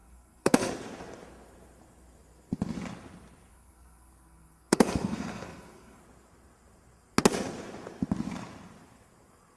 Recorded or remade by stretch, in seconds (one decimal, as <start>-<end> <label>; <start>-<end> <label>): 0.0-0.7 remade; 0.7-3.5 recorded; 3.5-6.0 remade; 6.0-9.6 recorded